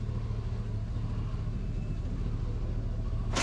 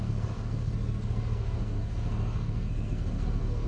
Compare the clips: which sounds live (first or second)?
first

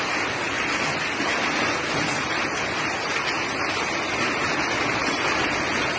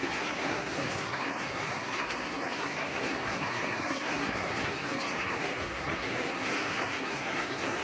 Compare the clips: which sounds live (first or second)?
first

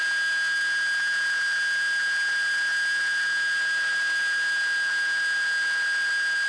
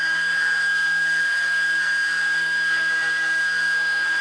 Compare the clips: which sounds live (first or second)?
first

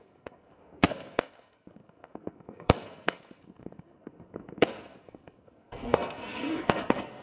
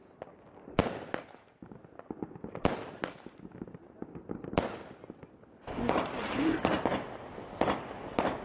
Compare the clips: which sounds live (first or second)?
second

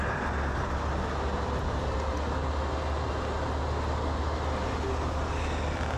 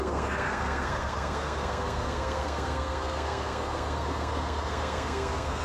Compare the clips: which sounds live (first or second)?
first